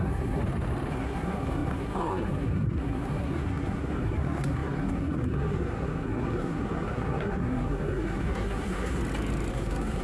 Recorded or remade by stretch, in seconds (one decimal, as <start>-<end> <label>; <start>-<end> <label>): 0.0-0.4 remade; 0.4-0.9 recorded; 0.9-9.0 remade; 9.0-9.5 recorded; 9.5-10.0 remade